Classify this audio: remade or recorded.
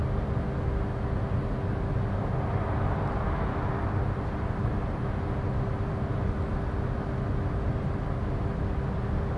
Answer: recorded